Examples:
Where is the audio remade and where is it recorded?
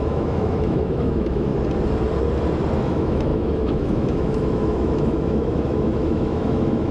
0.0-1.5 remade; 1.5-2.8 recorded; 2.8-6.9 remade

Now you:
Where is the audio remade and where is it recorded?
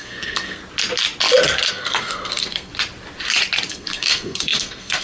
0.0-0.6 remade; 0.6-1.7 recorded; 1.7-2.7 remade; 2.7-3.7 recorded; 3.7-5.0 remade